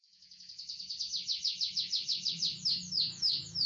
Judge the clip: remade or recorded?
remade